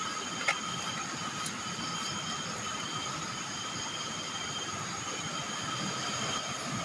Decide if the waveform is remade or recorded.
recorded